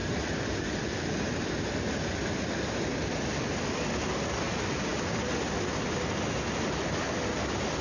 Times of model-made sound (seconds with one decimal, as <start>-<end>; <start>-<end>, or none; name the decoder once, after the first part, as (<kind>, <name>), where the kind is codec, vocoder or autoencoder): none